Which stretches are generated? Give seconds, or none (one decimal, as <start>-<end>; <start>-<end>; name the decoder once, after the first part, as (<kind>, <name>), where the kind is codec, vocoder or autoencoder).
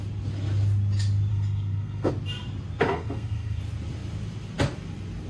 1.3-2.1 (codec, SNAC); 2.9-3.6